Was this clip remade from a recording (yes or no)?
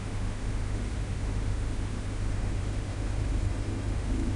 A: yes